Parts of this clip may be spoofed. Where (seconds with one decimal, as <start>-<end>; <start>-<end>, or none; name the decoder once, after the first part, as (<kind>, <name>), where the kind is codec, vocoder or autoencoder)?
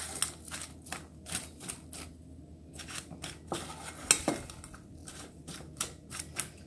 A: 5.0-6.2 (vocoder, BigVGAN v2)